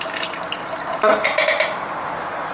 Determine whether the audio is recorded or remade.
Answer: recorded